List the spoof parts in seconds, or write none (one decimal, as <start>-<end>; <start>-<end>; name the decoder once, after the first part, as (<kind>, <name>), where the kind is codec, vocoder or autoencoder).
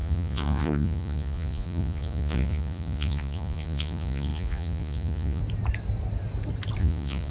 0.0-5.4 (vocoder, Vocos); 6.8-7.3